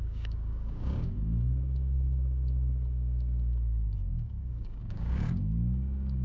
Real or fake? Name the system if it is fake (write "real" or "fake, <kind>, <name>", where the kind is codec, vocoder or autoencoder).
fake, codec, DAC